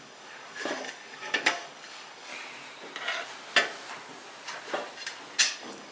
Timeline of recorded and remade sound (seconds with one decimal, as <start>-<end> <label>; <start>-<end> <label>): 0.0-2.3 remade; 2.3-5.4 recorded; 5.4-5.9 remade